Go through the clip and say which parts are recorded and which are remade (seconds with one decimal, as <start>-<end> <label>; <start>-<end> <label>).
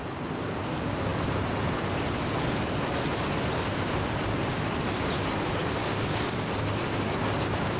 0.0-5.8 recorded; 5.8-7.2 remade; 7.2-7.8 recorded